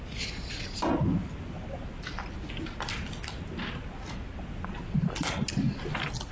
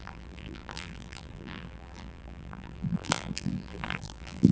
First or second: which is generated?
second